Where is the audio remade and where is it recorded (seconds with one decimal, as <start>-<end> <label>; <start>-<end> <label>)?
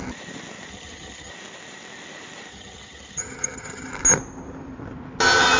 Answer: 0.0-0.7 recorded; 0.7-1.3 remade; 1.3-2.5 recorded; 2.5-3.9 remade; 3.9-5.6 recorded